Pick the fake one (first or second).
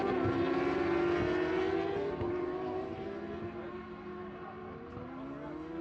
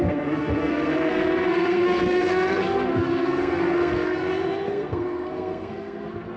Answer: second